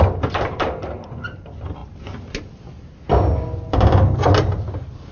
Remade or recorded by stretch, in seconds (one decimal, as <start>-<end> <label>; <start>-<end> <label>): 0.0-5.1 recorded